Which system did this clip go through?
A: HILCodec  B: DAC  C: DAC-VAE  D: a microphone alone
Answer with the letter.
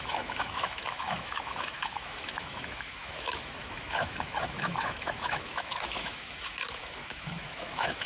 C